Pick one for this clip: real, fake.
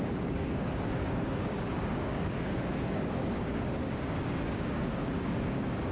fake